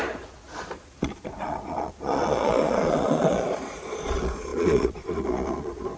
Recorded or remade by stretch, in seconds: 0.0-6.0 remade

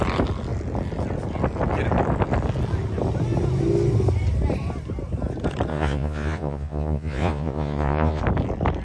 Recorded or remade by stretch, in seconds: 0.0-5.7 recorded; 5.7-8.2 remade; 8.2-8.8 recorded

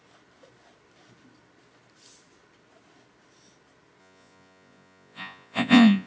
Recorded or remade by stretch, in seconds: 0.0-4.0 recorded; 4.0-6.1 remade

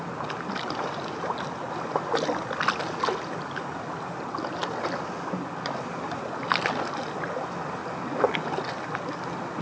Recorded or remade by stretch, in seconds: 0.0-9.6 recorded

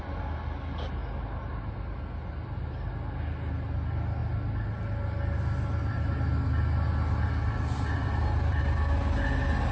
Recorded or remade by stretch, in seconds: 0.0-9.7 recorded

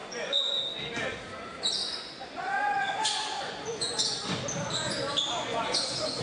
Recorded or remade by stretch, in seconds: 0.0-0.6 remade; 0.6-1.8 recorded; 1.8-4.4 remade; 4.4-5.5 recorded; 5.5-6.2 remade